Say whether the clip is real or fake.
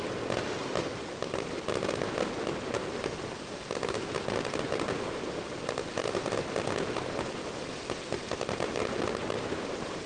real